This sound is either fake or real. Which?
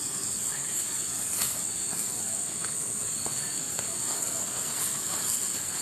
fake